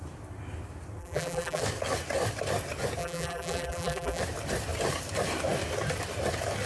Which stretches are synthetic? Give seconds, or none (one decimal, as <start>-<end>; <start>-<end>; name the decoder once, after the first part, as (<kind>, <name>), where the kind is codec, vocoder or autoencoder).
1.0-1.6 (vocoder, BigVGAN v2); 3.0-4.2